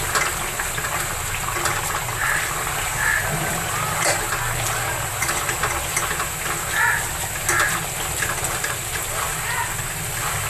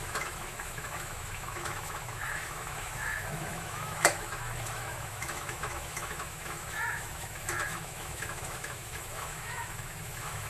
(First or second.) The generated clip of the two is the second